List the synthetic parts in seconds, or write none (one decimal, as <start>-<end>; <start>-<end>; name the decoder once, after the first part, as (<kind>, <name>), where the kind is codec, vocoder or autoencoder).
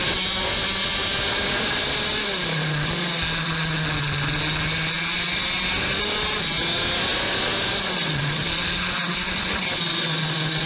none